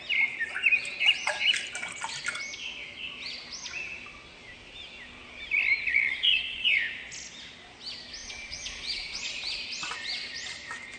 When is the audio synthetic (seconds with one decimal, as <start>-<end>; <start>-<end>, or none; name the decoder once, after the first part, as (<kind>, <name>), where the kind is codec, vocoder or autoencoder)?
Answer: 5.9-6.8 (vocoder, Vocos); 8.2-9.4

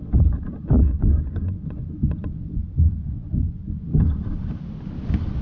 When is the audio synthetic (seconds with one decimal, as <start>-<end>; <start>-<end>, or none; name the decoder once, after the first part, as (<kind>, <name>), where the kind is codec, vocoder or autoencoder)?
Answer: 0.8-4.0 (vocoder, Vocos)

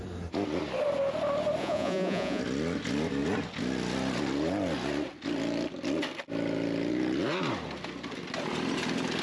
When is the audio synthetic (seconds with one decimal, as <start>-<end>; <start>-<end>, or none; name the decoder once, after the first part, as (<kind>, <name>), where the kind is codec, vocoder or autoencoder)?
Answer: 1.6-2.4 (vocoder, Vocos)